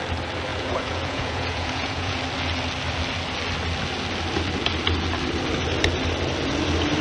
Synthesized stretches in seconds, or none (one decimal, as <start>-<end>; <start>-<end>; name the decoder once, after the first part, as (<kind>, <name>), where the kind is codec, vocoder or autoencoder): 0.5-2.2 (vocoder, Vocos)